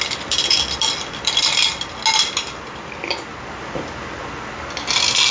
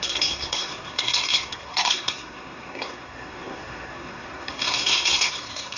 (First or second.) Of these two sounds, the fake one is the second